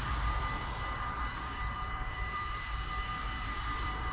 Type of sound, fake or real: fake